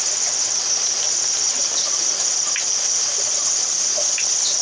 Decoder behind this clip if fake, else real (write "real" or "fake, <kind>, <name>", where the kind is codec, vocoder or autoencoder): real